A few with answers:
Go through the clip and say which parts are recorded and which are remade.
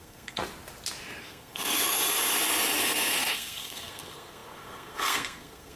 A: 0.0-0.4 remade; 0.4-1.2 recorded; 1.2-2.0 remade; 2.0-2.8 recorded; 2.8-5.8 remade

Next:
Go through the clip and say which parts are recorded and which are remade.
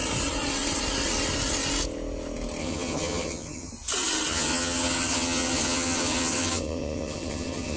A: 0.0-2.6 recorded; 2.6-3.7 remade; 3.7-4.3 recorded; 4.3-7.8 remade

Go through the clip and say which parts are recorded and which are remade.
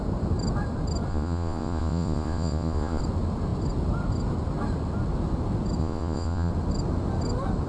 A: 0.0-1.1 recorded; 1.1-3.0 remade; 3.0-5.8 recorded; 5.8-6.5 remade; 6.5-7.7 recorded